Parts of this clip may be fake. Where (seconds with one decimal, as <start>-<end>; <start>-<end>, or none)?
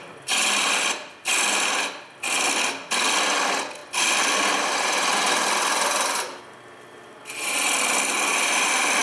none